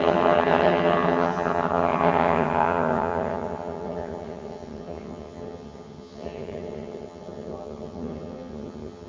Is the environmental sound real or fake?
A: fake